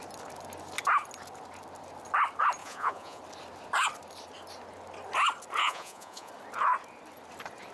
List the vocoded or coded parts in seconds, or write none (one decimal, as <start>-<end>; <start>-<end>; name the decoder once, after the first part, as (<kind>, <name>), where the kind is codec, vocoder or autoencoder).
2.6-3.2 (vocoder, Vocos); 5.6-6.3

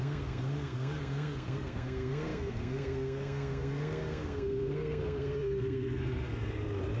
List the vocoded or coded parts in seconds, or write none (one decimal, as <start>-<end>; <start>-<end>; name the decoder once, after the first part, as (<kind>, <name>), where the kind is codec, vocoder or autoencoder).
0.0-6.3 (codec, SNAC)

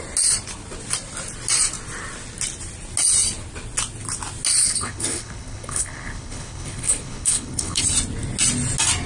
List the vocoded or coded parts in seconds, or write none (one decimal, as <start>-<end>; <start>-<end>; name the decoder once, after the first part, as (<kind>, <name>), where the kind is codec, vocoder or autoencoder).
4.6-7.8 (codec, HILCodec)

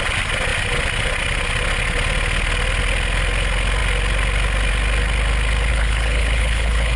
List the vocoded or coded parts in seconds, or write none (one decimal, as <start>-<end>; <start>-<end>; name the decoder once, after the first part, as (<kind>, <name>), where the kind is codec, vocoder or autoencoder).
5.7-7.0 (codec, HILCodec)

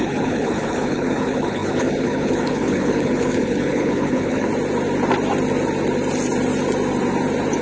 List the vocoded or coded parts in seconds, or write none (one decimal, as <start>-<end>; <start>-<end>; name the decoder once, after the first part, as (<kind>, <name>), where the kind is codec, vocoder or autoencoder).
0.0-4.5 (codec, HILCodec)